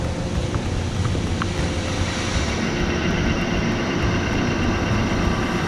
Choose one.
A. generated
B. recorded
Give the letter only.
A